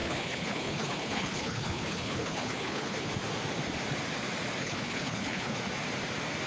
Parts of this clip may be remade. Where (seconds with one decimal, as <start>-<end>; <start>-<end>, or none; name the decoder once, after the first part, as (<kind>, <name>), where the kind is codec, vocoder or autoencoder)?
0.0-3.1 (codec, HILCodec); 4.6-5.6

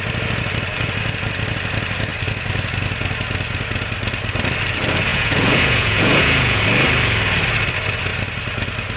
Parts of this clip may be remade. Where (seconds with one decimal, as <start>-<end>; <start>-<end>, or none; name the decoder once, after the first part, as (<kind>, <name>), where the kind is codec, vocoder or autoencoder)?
5.1-6.6 (vocoder, Vocos)

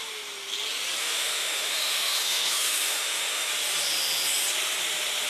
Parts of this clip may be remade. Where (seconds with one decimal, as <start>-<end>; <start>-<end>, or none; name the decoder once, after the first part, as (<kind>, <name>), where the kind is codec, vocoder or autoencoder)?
1.0-3.5 (autoencoder, DAC-VAE)